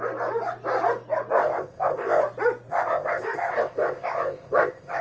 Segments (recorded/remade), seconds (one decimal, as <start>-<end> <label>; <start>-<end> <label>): 0.0-1.3 recorded; 1.3-2.2 remade; 2.2-2.7 recorded; 2.7-5.0 remade

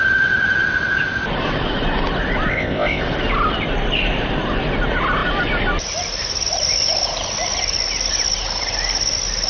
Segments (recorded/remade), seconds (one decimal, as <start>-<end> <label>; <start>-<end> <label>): 0.0-2.5 recorded; 2.5-3.0 remade; 3.0-9.5 recorded

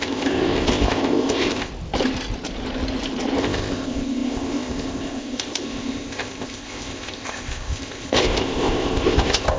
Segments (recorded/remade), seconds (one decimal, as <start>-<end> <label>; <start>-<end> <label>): 0.0-1.7 remade; 1.7-3.4 recorded; 3.4-9.6 remade

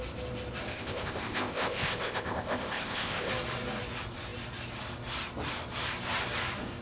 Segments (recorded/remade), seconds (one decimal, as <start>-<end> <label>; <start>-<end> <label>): 0.0-0.7 recorded; 0.7-3.3 remade; 3.3-6.8 recorded

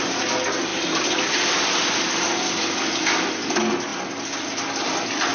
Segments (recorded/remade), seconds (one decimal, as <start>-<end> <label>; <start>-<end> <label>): 0.0-5.3 recorded

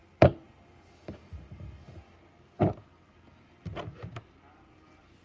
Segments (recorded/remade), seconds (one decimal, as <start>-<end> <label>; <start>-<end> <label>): 0.0-5.2 recorded